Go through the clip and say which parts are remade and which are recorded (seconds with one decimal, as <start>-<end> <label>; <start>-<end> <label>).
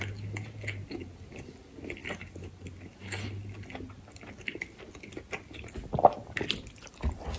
0.0-7.4 recorded